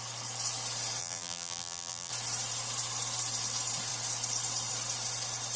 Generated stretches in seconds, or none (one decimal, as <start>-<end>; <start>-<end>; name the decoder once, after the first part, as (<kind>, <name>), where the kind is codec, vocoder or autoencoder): 1.0-2.1 (vocoder, BigVGAN v2)